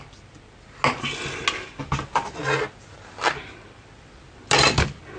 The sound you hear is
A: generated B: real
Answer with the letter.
B